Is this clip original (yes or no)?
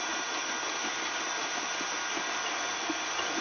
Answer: no